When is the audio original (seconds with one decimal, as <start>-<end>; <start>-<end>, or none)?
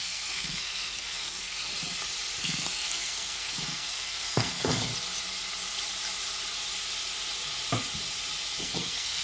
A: 1.7-2.4; 4.9-8.6